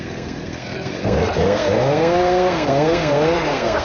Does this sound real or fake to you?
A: fake